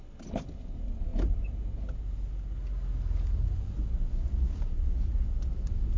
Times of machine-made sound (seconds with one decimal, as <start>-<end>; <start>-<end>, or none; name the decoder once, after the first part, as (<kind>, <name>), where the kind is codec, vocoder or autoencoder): none